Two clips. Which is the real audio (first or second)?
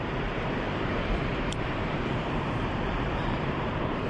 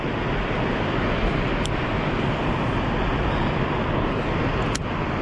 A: second